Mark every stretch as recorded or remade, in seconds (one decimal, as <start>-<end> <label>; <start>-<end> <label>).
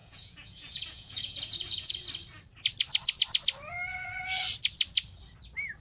0.0-1.9 remade; 1.9-5.8 recorded